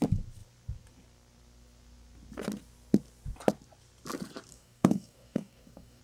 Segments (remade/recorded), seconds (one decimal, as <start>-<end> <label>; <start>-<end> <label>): 0.0-4.5 recorded; 4.5-6.0 remade